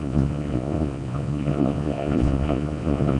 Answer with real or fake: fake